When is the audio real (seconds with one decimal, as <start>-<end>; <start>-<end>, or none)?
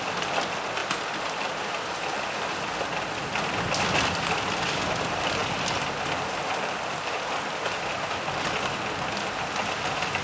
0.0-10.2